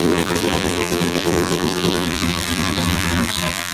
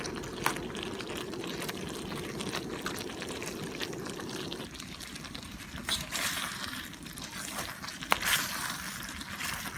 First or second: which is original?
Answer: second